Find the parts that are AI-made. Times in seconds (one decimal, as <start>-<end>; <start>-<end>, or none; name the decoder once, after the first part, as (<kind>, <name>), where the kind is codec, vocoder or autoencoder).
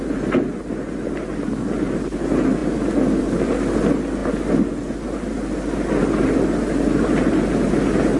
none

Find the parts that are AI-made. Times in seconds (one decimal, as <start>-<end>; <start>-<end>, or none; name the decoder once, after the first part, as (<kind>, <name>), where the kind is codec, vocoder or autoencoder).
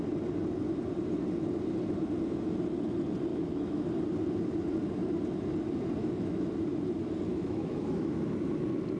3.3-3.9 (autoencoder, DAC-VAE); 6.0-6.5; 7.3-8.3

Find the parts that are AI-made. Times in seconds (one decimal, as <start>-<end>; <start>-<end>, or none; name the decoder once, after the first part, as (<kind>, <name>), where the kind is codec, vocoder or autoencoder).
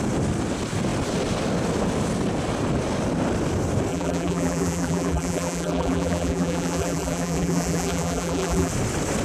3.9-8.7 (vocoder, BigVGAN v2)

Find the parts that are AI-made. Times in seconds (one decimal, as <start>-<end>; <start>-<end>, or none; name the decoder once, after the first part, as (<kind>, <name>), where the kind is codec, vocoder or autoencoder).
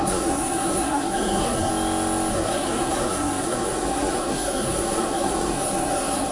0.0-1.7 (codec, SNAC); 2.3-6.3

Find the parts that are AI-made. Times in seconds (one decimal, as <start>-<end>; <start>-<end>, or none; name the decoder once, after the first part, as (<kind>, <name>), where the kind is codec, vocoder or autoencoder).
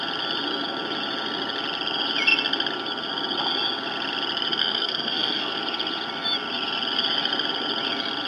4.6-5.5 (codec, SNAC)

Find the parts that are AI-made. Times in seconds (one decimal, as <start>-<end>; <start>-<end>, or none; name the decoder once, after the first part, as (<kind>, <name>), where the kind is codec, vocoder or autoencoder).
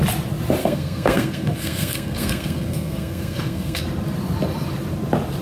0.6-3.8 (codec, SNAC)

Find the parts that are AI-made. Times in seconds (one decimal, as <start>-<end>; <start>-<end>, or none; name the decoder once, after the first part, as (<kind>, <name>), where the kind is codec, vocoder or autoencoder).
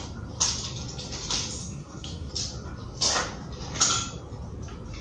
1.6-2.3 (codec, SNAC)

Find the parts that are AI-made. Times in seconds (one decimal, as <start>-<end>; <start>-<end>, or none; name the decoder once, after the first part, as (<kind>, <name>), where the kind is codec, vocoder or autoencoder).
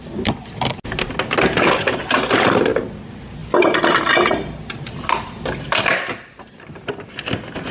3.4-6.8 (vocoder, BigVGAN v2)